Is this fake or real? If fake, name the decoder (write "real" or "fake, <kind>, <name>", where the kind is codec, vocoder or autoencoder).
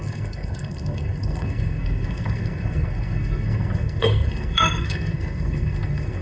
fake, codec, SNAC